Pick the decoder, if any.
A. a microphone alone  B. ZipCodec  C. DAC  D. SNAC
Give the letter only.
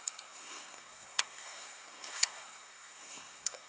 D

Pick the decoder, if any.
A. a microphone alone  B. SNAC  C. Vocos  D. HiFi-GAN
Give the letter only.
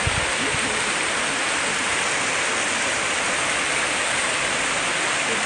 A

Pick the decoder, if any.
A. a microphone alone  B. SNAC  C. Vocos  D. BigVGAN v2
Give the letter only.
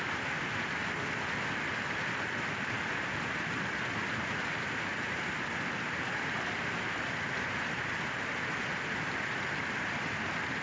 A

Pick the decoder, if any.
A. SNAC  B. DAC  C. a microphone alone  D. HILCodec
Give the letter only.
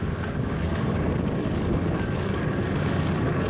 B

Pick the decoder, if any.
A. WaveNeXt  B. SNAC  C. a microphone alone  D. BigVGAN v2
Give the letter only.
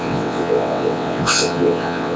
A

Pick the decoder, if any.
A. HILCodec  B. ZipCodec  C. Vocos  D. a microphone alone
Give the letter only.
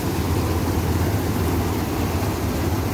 D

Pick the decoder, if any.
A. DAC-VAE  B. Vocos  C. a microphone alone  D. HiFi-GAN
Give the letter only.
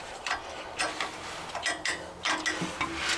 C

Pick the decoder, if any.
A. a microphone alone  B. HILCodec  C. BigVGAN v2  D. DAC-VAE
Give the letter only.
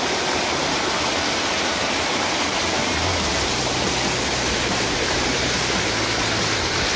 A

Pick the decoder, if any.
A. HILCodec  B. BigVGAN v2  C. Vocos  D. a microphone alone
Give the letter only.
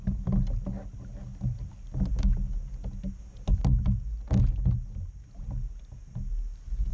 D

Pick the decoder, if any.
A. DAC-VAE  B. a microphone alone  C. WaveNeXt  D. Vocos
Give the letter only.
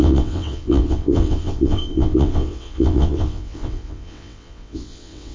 C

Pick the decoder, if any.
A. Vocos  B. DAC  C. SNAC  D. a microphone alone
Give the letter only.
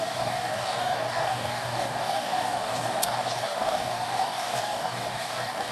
B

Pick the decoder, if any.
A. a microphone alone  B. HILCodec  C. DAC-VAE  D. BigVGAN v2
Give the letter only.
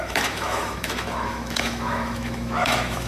C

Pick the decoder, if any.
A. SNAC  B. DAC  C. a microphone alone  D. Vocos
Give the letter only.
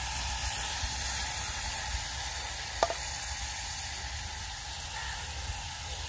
C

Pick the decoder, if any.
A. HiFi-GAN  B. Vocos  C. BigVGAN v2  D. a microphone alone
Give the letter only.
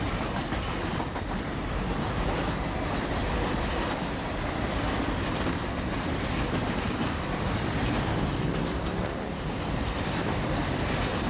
D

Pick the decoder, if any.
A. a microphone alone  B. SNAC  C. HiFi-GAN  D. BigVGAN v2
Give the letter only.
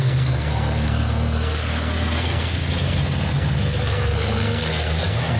B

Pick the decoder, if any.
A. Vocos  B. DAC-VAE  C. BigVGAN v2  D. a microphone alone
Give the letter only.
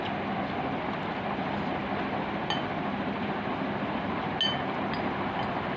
D